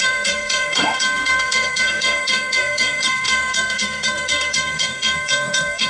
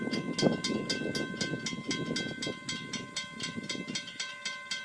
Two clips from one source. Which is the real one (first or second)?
second